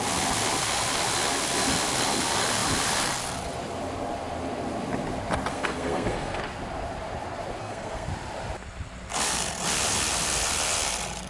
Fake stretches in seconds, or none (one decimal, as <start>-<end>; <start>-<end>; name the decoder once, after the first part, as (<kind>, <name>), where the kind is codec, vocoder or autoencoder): 5.5-6.4 (codec, SNAC); 7.6-8.1